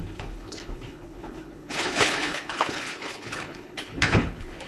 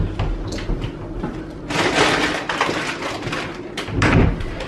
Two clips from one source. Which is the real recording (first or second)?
second